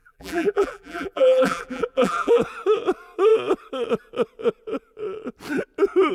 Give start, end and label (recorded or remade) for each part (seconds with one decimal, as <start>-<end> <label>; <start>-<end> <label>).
0.0-2.4 remade; 2.4-6.1 recorded

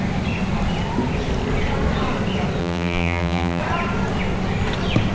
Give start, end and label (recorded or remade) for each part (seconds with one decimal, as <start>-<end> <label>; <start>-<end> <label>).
0.0-2.6 recorded; 2.6-3.6 remade; 3.6-5.1 recorded

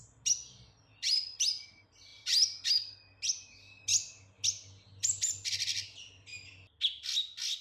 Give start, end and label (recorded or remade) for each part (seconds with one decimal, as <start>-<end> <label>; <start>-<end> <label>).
0.0-7.6 recorded

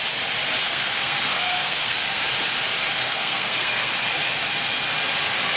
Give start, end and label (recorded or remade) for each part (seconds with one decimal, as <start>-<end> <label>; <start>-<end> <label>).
0.0-0.6 recorded; 0.6-2.2 remade; 2.2-3.0 recorded; 3.0-3.9 remade; 3.9-5.6 recorded

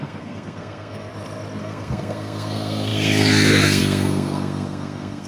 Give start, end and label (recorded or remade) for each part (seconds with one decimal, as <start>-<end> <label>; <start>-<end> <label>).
0.0-1.1 remade; 1.1-1.6 recorded; 1.6-5.3 remade